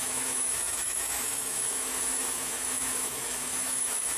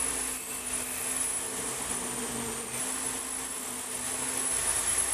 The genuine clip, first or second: second